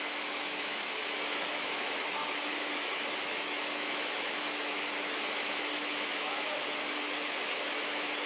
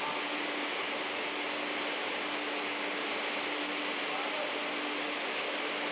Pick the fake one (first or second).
first